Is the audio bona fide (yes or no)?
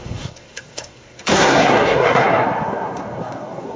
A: no